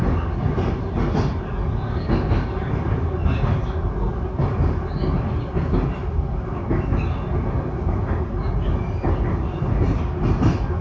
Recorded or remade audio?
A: recorded